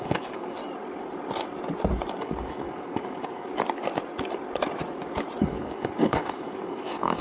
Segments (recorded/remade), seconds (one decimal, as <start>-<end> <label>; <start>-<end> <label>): 0.0-0.6 remade; 0.6-2.2 recorded; 2.2-3.5 remade; 3.5-5.4 recorded; 5.4-7.2 remade